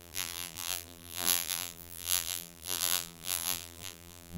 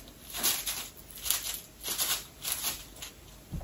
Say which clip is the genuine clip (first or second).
second